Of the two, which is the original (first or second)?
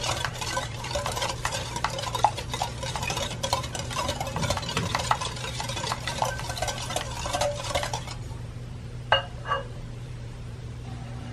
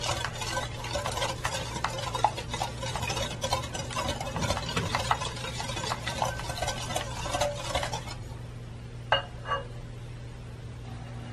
second